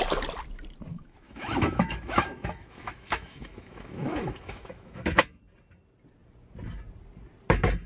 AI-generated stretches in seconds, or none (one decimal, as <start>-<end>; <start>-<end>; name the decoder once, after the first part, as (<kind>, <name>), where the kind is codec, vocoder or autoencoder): 0.9-5.4 (autoencoder, DAC-VAE)